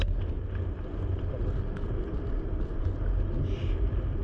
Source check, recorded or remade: recorded